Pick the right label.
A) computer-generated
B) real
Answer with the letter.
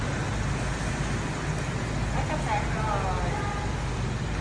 B